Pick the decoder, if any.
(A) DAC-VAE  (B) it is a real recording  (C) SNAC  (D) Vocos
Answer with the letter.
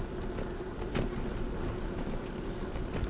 B